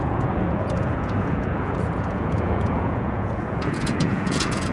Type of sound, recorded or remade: remade